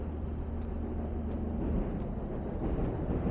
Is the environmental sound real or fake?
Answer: real